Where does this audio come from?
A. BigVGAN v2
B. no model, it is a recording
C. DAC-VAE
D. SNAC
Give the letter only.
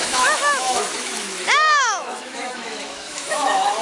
C